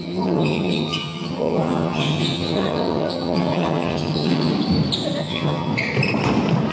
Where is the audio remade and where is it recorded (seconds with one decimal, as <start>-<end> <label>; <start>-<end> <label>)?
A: 0.0-4.5 remade; 4.5-5.2 recorded; 5.2-5.7 remade; 5.7-6.7 recorded